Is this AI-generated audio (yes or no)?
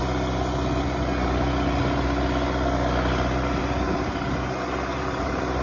no